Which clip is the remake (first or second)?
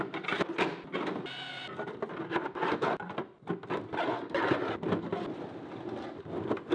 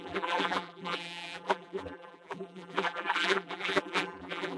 second